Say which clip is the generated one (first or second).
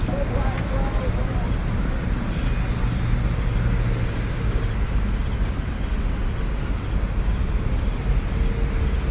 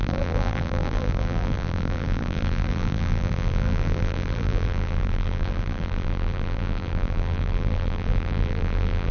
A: second